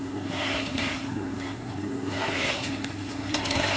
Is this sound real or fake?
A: fake